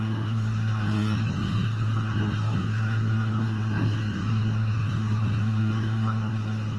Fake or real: fake